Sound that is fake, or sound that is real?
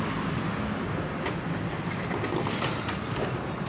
real